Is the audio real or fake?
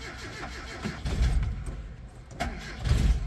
real